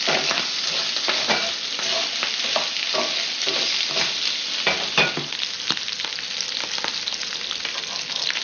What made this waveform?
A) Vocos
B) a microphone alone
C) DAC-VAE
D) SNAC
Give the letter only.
B